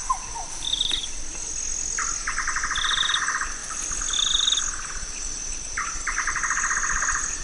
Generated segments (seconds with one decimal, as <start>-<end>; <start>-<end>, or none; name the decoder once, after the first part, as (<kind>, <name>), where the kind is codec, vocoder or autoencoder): 3.0-7.4 (vocoder, BigVGAN v2)